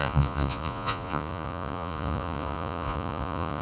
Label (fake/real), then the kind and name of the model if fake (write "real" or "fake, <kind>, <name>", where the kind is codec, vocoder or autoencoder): fake, vocoder, Vocos